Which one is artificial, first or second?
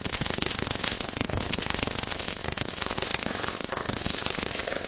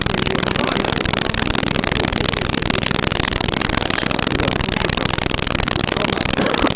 first